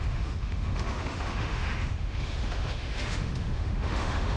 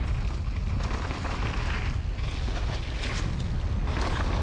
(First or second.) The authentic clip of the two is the second